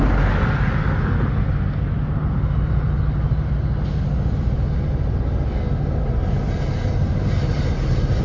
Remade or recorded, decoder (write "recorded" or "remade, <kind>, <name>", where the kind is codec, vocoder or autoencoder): recorded